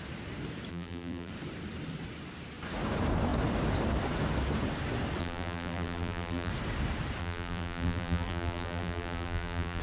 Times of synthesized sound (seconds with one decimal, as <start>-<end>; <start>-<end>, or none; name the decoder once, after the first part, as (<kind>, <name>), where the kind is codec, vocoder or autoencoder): 0.7-1.3 (vocoder, BigVGAN v2); 5.2-6.5; 7.2-9.8